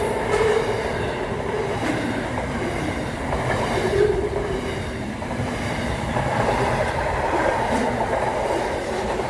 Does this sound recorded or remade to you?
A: remade